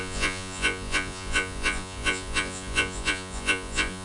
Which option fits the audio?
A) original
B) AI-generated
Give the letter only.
B